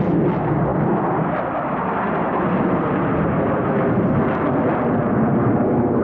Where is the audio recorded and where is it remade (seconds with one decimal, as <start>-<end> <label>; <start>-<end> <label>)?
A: 0.0-6.0 recorded